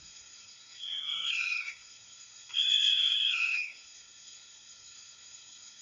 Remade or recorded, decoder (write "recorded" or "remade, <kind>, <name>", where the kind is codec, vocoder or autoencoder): remade, codec, SNAC